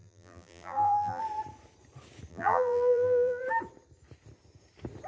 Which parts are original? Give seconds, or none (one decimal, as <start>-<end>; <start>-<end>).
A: 1.2-2.3; 3.4-5.1